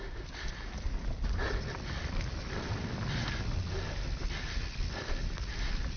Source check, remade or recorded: recorded